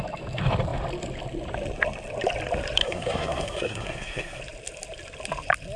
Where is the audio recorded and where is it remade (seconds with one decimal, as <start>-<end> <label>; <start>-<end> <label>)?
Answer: 0.0-2.8 recorded; 2.8-4.4 remade; 4.4-5.8 recorded